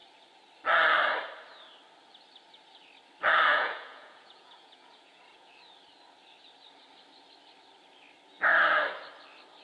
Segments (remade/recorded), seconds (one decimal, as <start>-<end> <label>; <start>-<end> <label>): 0.0-3.5 recorded; 3.5-5.5 remade; 5.5-9.6 recorded